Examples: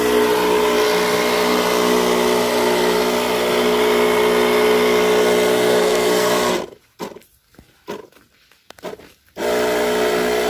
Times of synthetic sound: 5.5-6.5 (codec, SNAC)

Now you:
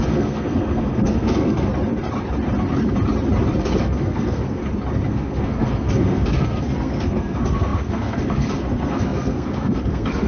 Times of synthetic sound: 0.0-1.7 (codec, SNAC); 3.6-4.6; 5.1-10.3

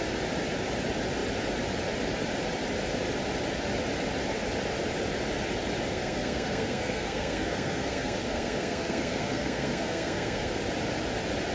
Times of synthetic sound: 5.9-10.6 (codec, SNAC)